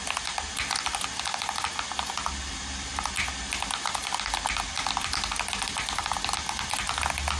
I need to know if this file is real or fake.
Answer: real